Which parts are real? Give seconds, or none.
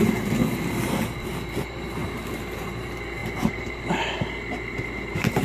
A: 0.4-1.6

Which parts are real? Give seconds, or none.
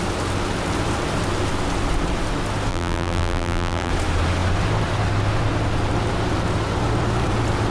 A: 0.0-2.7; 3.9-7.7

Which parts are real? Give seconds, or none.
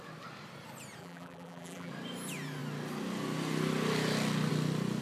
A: 0.0-1.0; 1.9-5.0